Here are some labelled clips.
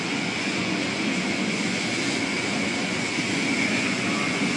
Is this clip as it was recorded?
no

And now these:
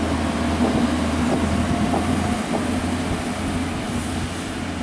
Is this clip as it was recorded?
yes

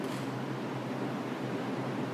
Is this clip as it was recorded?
yes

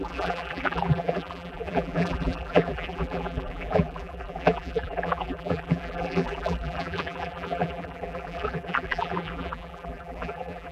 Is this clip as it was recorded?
no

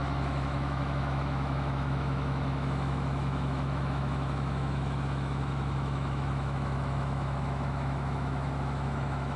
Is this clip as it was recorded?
no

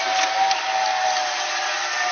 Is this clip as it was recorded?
yes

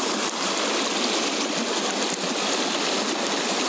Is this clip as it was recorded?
yes